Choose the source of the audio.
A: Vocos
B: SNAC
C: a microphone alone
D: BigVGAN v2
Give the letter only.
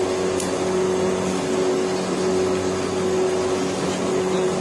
C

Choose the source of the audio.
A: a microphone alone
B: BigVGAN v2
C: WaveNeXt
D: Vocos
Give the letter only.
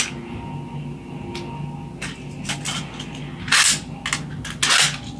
A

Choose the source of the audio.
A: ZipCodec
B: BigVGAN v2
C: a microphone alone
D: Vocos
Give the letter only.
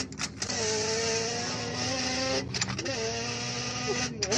C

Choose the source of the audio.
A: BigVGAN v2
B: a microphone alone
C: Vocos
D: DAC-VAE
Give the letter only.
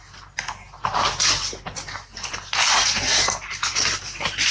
B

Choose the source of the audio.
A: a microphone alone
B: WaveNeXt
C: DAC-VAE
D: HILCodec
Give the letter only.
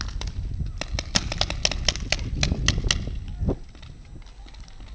A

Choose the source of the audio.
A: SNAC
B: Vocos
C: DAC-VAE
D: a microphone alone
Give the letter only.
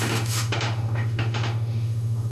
C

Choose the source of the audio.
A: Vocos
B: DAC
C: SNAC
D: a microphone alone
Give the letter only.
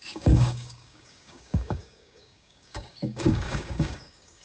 B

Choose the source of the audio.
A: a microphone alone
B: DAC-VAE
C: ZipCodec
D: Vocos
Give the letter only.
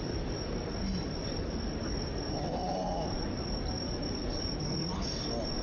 A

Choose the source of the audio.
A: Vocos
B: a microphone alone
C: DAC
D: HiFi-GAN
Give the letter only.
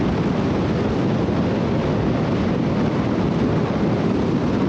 B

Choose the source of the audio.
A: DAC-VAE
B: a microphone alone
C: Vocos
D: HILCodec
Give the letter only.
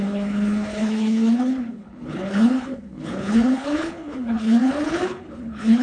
D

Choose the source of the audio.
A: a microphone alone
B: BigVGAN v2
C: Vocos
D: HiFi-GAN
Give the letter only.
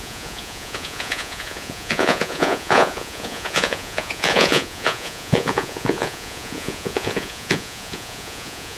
C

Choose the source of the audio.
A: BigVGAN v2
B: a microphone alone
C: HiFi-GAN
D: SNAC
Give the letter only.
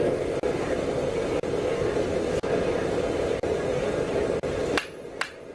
B